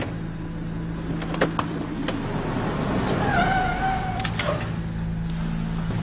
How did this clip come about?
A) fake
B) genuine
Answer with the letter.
B